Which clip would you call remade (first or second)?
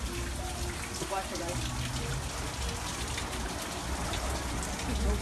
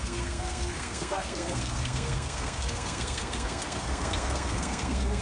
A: second